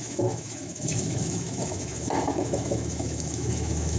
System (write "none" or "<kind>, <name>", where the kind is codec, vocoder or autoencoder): autoencoder, DAC-VAE